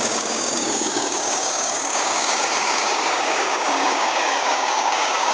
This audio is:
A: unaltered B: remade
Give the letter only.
B